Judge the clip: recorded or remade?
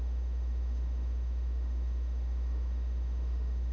remade